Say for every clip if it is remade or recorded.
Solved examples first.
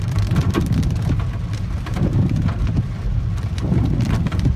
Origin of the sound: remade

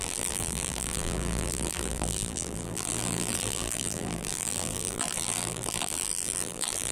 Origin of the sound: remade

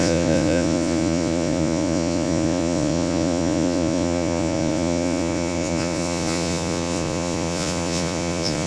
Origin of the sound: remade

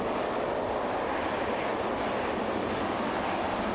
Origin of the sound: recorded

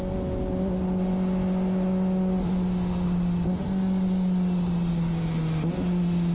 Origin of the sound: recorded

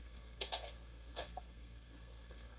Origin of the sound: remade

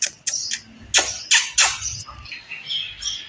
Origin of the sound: recorded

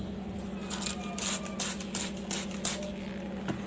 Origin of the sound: recorded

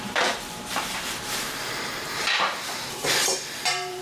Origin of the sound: remade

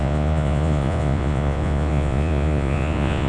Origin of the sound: remade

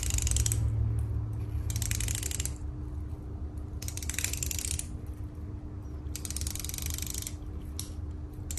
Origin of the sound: recorded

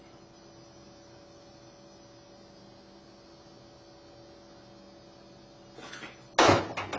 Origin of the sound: recorded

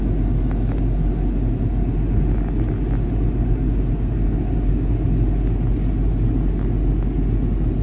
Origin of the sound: recorded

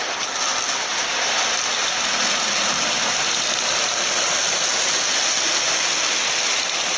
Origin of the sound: recorded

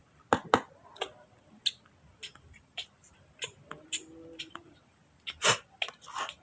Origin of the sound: recorded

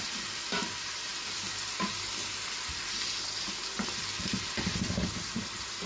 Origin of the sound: remade